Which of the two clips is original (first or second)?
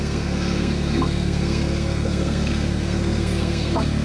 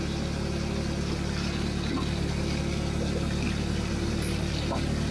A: second